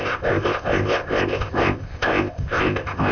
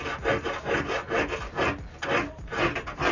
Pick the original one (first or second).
second